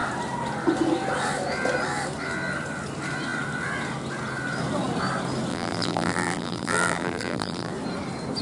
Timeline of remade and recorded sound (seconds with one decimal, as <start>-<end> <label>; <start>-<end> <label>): 0.0-5.5 recorded; 5.5-7.7 remade; 7.7-8.4 recorded